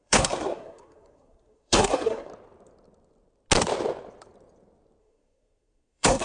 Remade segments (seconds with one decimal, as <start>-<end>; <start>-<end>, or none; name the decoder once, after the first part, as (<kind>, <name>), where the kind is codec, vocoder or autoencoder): 0.0-2.3 (codec, SNAC); 5.0-6.2